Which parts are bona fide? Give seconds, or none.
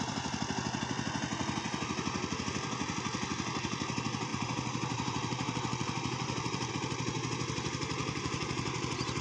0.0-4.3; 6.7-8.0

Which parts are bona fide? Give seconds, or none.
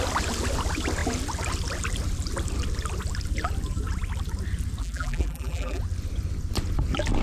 0.0-4.8; 5.8-7.2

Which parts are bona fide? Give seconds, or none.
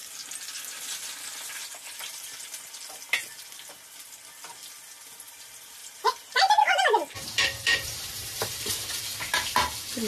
0.0-5.8; 9.0-10.1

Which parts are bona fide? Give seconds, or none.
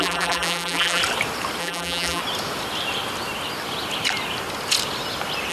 1.0-1.6; 2.2-5.5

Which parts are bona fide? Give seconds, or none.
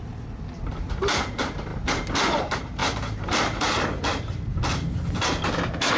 0.0-2.8; 3.4-6.0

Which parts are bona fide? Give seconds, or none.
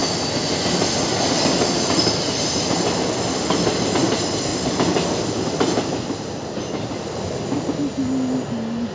0.0-4.5; 7.4-8.9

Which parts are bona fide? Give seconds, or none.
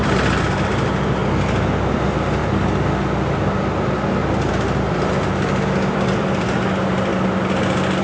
1.2-1.9; 2.4-4.5; 7.1-8.0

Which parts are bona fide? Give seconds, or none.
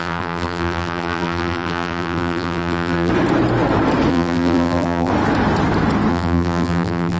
3.1-4.1; 5.1-6.1